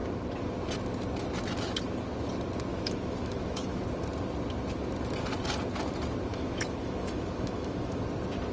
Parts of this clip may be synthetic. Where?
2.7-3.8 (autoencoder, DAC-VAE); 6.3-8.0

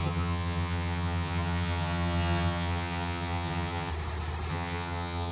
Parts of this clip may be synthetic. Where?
0.0-3.9 (vocoder, HiFi-GAN); 4.5-5.3

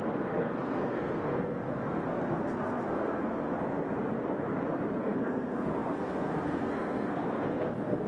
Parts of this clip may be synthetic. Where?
0.0-3.6 (codec, SNAC); 5.0-8.1

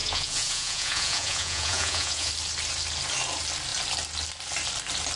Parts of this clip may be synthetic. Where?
0.0-2.3 (vocoder, Vocos)